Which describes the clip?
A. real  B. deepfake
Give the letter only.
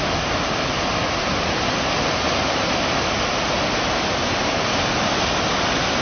A